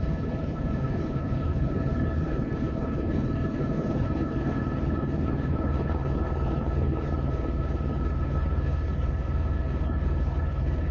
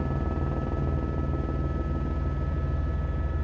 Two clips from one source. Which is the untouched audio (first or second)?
second